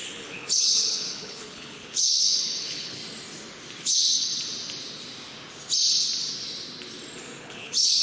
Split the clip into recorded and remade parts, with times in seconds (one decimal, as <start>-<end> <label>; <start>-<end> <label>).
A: 0.0-3.0 remade; 3.0-3.8 recorded; 3.8-4.3 remade; 4.3-7.4 recorded; 7.4-8.0 remade